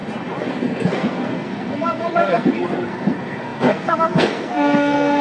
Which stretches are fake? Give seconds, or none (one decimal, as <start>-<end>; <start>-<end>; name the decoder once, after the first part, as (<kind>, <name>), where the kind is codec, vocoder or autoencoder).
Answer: 0.5-5.2 (codec, SNAC)